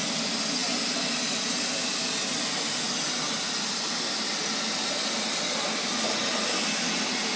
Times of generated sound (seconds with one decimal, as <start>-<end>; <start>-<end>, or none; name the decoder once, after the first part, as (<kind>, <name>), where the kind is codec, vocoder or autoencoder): none